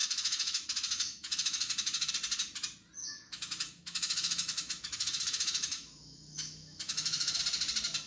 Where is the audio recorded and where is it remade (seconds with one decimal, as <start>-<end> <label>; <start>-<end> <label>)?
0.0-2.1 remade; 2.1-3.0 recorded; 3.0-7.4 remade; 7.4-8.1 recorded